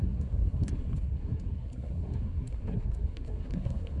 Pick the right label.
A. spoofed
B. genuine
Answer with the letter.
A